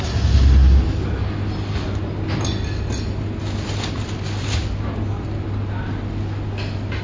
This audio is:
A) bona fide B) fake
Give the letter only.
A